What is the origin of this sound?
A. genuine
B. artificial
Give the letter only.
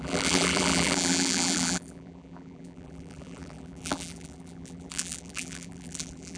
B